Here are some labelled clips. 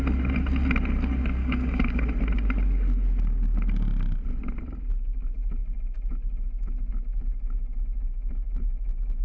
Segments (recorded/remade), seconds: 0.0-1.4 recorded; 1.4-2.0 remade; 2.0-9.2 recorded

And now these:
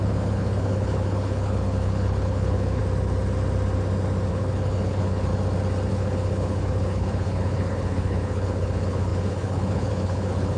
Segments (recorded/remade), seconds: 0.0-2.8 remade; 2.8-4.3 recorded; 4.3-5.3 remade; 5.3-5.9 recorded; 5.9-10.6 remade

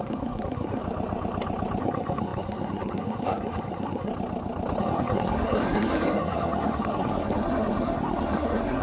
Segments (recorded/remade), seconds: 0.0-0.8 remade; 0.8-1.8 recorded; 1.8-4.1 remade; 4.1-4.8 recorded; 4.8-8.8 remade

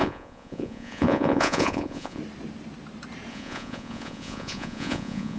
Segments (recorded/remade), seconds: 0.0-2.2 remade; 2.2-3.3 recorded; 3.3-5.4 remade